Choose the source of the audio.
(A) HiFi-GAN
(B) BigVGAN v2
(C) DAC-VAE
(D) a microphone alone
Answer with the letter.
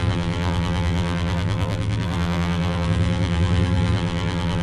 B